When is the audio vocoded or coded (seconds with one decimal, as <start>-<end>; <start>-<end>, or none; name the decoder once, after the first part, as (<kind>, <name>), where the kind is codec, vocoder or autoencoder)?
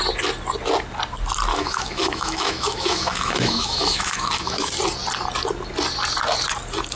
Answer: 1.5-4.7 (autoencoder, DAC-VAE)